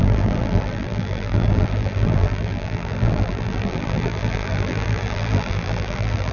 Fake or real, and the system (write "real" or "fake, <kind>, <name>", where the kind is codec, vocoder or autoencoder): fake, vocoder, BigVGAN v2